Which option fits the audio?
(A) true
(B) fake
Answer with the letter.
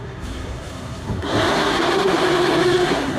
B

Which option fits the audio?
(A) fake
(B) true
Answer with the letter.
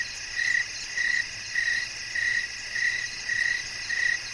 B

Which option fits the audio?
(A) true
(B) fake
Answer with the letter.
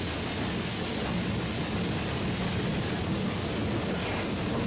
A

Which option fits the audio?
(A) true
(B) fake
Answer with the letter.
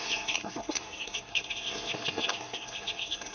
B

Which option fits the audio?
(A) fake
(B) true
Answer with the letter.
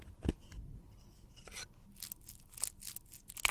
B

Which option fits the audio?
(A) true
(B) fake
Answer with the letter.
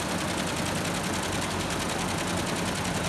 A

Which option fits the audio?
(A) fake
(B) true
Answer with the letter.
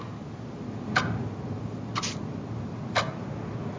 B